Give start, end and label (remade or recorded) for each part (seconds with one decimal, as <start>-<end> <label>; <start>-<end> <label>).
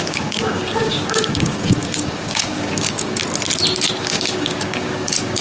0.0-3.2 remade; 3.2-4.0 recorded; 4.0-5.4 remade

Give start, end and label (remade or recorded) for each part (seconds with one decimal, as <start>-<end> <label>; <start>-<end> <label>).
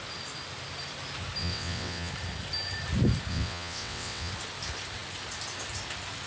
0.0-1.4 recorded; 1.4-2.1 remade; 2.1-3.3 recorded; 3.3-4.3 remade; 4.3-6.3 recorded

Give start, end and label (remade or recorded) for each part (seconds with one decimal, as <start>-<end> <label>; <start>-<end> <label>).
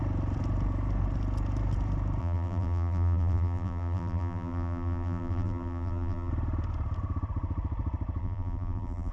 0.0-2.2 recorded; 2.2-6.3 remade; 6.3-8.2 recorded; 8.2-9.1 remade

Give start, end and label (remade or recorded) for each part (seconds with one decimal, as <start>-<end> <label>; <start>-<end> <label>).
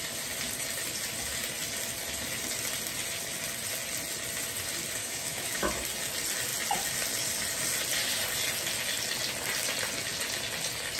0.0-5.0 recorded; 5.0-5.7 remade; 5.7-11.0 recorded